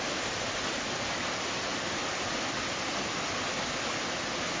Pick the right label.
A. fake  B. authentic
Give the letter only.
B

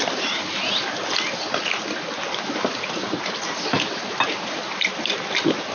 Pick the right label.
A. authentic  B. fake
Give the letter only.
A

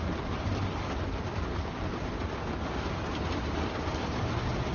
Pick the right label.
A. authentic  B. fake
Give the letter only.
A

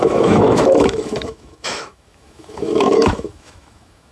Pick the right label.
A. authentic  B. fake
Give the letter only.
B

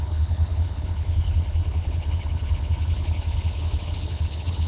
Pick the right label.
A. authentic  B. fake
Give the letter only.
B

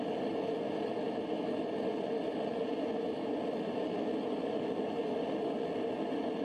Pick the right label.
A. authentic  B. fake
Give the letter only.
A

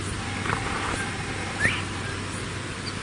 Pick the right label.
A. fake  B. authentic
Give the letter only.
B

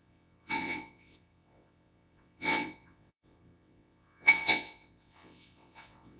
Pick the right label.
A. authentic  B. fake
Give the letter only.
B